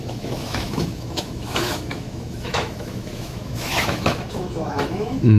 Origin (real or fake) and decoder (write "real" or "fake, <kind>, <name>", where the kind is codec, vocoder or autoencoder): fake, autoencoder, DAC-VAE